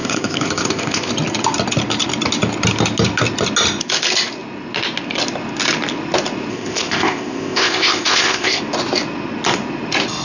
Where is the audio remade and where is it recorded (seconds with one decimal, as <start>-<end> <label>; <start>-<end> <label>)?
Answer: 0.0-1.1 remade; 1.1-6.5 recorded; 6.5-8.6 remade; 8.6-10.2 recorded